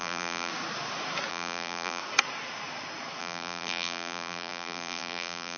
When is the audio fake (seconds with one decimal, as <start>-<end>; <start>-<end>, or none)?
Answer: 0.0-0.5; 1.3-2.0; 3.2-5.6